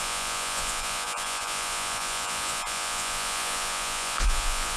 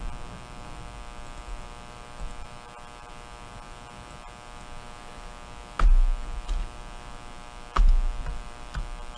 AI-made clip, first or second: first